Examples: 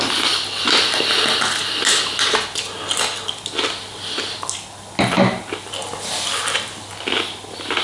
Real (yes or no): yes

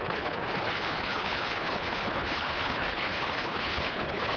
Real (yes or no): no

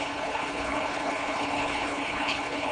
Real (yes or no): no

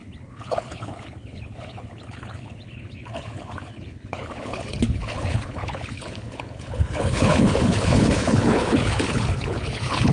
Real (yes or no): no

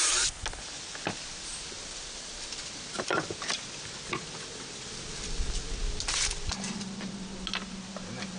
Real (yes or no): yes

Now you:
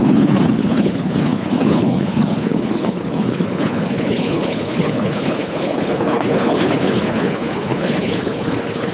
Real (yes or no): no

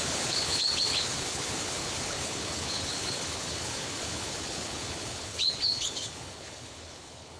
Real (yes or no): no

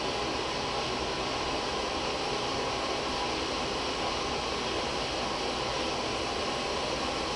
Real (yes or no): yes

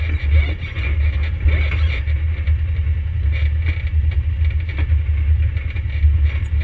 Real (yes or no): yes